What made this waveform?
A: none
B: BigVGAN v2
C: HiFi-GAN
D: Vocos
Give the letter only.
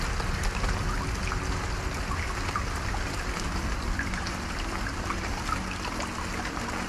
A